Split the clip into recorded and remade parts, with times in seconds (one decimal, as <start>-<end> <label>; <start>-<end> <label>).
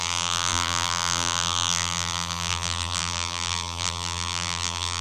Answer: 0.0-5.0 remade